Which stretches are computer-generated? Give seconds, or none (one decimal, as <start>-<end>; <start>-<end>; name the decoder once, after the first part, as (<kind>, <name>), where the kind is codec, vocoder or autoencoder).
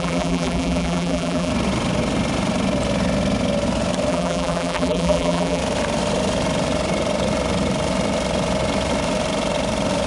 0.0-1.5 (vocoder, BigVGAN v2); 4.1-5.6